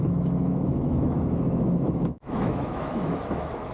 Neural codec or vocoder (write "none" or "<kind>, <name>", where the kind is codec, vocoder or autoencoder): autoencoder, DAC-VAE